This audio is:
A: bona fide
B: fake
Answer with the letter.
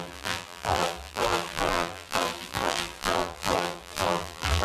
B